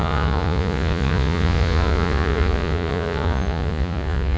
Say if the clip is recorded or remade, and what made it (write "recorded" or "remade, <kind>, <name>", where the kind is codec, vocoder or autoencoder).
remade, vocoder, Vocos